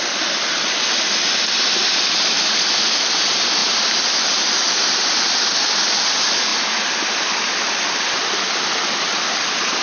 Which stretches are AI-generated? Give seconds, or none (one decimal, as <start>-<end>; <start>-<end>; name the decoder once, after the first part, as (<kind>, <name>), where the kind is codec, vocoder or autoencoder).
0.0-9.8 (vocoder, BigVGAN v2)